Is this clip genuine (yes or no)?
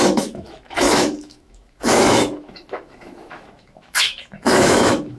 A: no